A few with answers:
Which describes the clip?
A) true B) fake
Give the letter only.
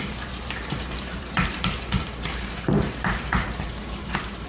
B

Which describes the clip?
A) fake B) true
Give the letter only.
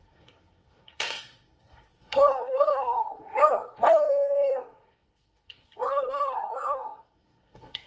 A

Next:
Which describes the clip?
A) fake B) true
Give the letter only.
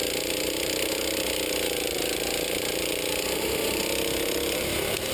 B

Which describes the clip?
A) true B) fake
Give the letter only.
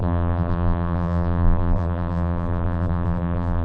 B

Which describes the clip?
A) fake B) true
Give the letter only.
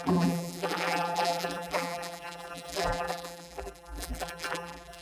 A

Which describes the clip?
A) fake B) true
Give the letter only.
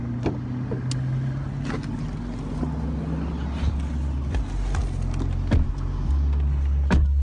B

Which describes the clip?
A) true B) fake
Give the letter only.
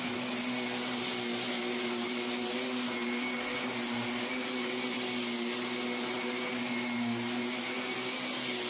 A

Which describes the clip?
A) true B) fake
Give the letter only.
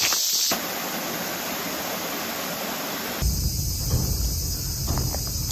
A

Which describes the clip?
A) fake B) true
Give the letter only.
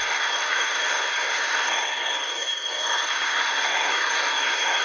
A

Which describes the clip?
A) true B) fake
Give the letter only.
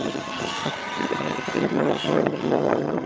B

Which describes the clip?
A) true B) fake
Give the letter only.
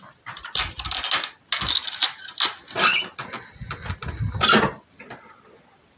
A